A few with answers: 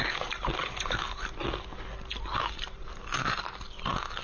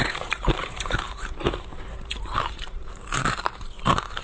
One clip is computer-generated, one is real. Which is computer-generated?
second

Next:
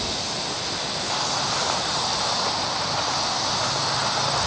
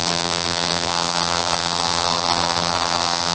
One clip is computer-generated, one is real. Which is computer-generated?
second